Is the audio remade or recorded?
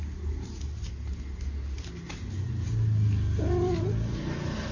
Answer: recorded